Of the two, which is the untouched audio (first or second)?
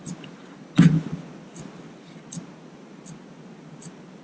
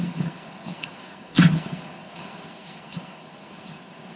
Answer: first